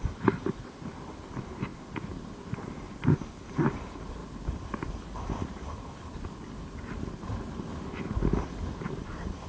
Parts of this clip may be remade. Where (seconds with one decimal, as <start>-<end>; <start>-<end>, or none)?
none